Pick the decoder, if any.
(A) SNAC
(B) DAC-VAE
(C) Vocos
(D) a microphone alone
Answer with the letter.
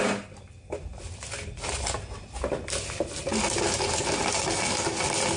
D